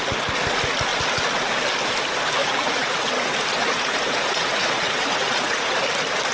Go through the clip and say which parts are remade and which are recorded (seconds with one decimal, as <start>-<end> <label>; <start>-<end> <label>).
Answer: 0.0-2.4 recorded; 2.4-3.0 remade; 3.0-3.6 recorded; 3.6-5.8 remade; 5.8-6.3 recorded